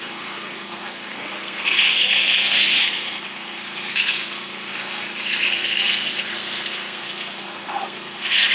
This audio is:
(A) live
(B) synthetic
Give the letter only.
B